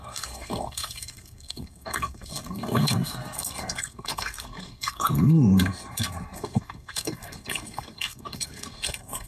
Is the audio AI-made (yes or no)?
yes